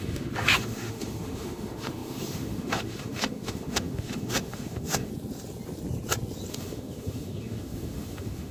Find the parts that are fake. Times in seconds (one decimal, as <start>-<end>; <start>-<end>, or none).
0.0-5.1; 6.5-8.5